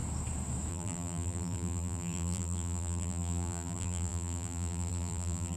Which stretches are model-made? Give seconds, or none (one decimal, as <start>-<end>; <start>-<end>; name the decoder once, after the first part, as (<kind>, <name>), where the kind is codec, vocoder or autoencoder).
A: 0.7-5.6 (vocoder, BigVGAN v2)